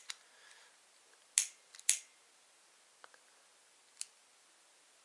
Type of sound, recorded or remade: recorded